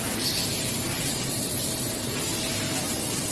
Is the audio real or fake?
real